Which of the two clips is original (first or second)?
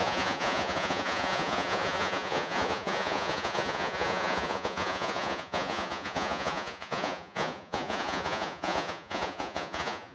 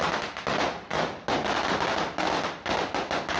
second